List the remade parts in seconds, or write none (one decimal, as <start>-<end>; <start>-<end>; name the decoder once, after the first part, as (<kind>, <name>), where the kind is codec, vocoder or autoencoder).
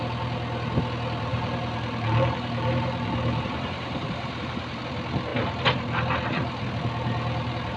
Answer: 1.3-4.8 (vocoder, BigVGAN v2)